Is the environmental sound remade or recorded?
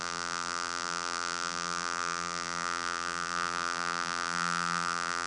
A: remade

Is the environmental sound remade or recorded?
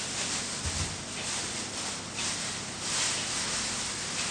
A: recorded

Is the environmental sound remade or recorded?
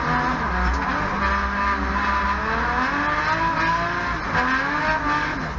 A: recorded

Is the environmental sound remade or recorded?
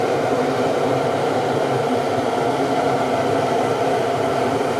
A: remade